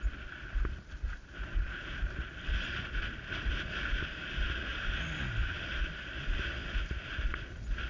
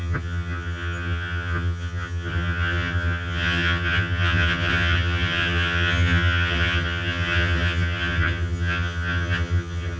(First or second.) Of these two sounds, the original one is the first